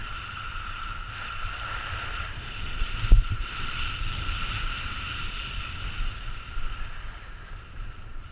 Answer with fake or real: fake